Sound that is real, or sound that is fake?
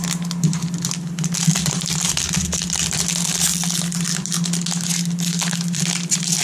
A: real